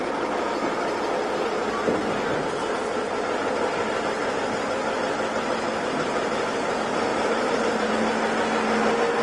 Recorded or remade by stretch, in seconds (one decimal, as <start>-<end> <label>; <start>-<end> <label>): 0.0-7.1 recorded; 7.1-7.9 remade; 7.9-9.2 recorded